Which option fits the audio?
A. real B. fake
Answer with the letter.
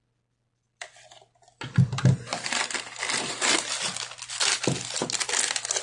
A